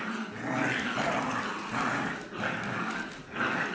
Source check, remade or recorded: recorded